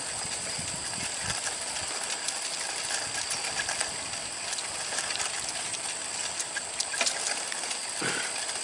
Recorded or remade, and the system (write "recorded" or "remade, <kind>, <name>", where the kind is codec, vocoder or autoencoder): recorded